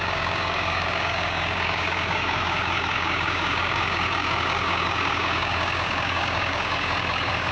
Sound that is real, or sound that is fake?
fake